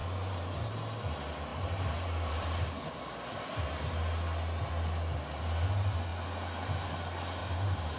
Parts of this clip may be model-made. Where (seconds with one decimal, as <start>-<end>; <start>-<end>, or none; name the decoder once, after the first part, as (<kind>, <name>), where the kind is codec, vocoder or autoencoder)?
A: 0.0-0.7 (vocoder, BigVGAN v2); 1.5-2.9; 6.1-6.9; 7.4-8.0